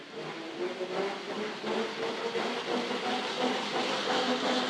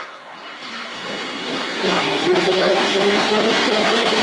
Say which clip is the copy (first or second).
second